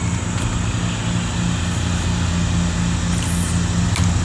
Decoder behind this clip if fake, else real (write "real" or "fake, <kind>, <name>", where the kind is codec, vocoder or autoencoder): real